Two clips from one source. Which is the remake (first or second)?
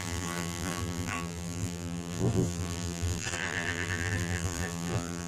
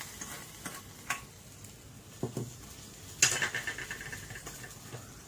first